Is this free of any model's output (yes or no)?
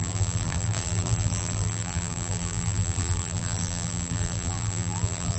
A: no